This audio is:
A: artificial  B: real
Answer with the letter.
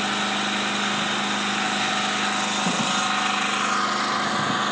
B